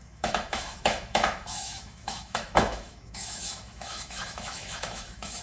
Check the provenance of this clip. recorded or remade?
remade